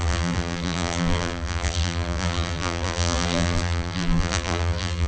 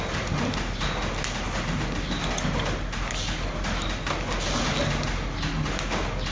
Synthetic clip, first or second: first